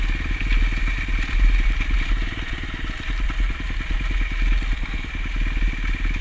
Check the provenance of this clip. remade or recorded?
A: recorded